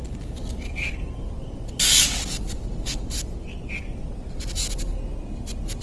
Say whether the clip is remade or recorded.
recorded